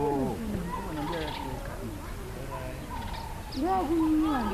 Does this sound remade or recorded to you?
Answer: recorded